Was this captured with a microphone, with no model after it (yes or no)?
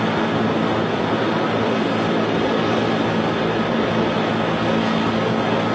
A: yes